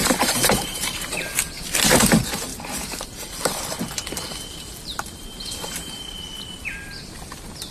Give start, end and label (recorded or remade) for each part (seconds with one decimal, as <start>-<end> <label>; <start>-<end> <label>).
0.0-1.4 remade; 1.4-2.5 recorded; 2.5-6.6 remade; 6.6-7.7 recorded